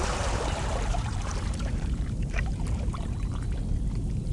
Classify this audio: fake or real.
fake